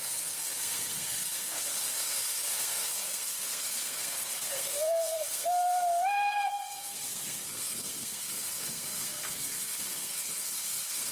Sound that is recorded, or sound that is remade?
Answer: remade